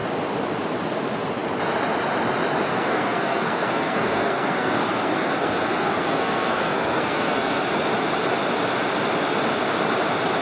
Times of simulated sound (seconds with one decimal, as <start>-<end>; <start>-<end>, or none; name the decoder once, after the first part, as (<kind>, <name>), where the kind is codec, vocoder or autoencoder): 2.7-7.6 (codec, SNAC)